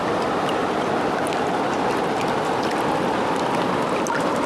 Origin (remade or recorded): recorded